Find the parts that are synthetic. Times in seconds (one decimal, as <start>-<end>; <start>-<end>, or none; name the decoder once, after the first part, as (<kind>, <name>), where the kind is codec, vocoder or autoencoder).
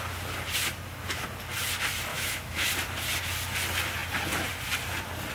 2.1-2.7 (autoencoder, DAC-VAE)